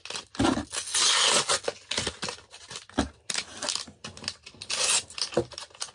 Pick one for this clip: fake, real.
real